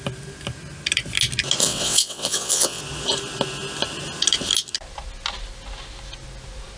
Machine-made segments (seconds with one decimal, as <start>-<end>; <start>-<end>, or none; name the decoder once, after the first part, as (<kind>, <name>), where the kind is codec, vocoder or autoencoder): 1.6-2.8 (vocoder, WaveNeXt)